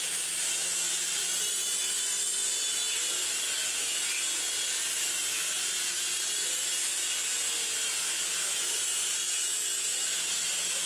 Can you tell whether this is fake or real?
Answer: real